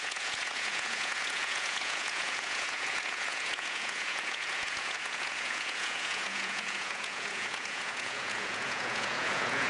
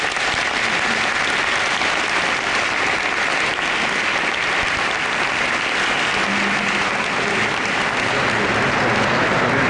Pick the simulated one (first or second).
first